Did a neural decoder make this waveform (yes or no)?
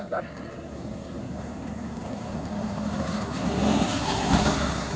yes